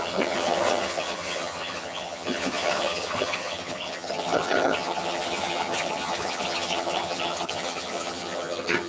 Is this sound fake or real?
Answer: fake